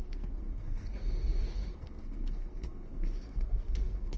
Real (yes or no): no